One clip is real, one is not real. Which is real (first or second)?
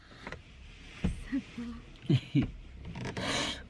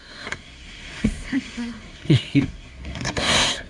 first